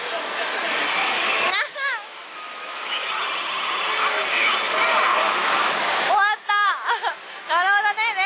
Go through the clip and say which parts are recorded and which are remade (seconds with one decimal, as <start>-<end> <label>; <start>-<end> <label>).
0.0-1.0 recorded; 1.0-3.1 remade; 3.1-5.1 recorded; 5.1-5.8 remade; 5.8-6.2 recorded; 6.2-7.1 remade; 7.1-8.3 recorded